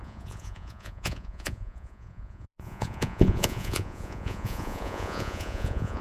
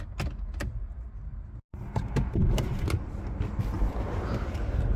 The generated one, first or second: first